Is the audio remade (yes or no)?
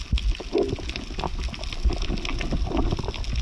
no